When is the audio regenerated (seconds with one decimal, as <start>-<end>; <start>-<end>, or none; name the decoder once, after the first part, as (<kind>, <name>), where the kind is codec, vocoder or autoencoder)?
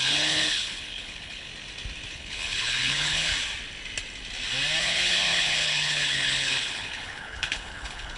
0.0-1.5 (codec, HILCodec); 2.1-3.3; 4.8-8.2